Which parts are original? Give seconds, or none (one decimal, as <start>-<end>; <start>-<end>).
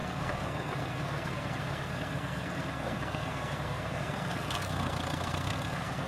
none